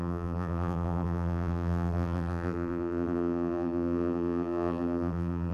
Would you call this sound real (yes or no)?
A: no